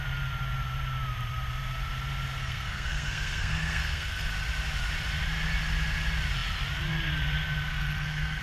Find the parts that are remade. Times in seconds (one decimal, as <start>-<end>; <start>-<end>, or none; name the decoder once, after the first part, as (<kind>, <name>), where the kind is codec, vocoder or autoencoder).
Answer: 2.4-4.3 (codec, SNAC); 7.7-8.4